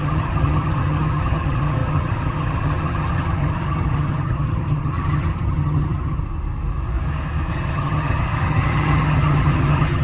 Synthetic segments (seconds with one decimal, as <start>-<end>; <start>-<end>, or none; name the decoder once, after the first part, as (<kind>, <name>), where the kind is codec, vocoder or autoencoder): 0.0-6.2 (vocoder, HiFi-GAN); 7.5-10.0